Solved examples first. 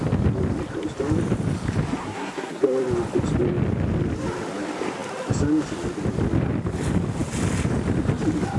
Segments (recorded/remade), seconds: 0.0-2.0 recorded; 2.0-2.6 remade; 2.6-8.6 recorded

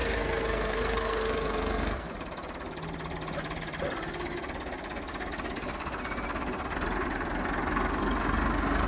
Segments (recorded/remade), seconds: 0.0-2.1 remade; 2.1-8.9 recorded

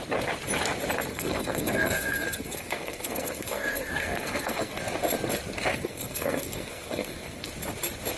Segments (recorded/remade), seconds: 0.0-1.1 recorded; 1.1-4.8 remade; 4.8-5.7 recorded; 5.7-7.5 remade; 7.5-8.2 recorded

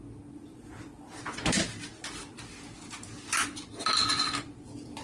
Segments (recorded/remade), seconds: 0.0-5.0 recorded